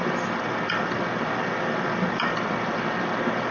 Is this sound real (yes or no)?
yes